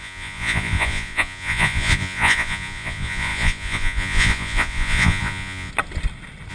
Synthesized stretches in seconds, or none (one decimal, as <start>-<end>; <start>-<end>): 0.0-5.7